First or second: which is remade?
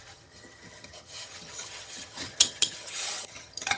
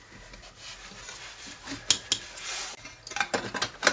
first